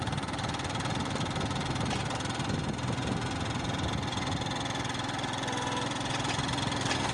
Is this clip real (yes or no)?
yes